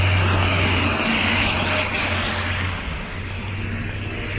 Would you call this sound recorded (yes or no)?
yes